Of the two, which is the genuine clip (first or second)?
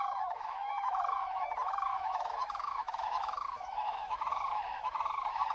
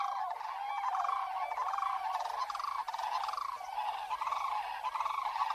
second